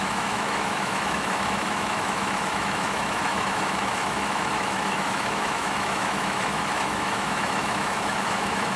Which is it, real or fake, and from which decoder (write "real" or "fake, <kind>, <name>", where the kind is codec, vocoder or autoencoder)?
fake, autoencoder, DAC-VAE